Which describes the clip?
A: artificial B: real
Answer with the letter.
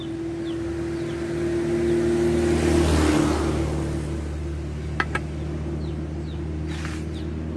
B